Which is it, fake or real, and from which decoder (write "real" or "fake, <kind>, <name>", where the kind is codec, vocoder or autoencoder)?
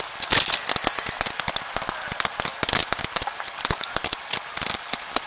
real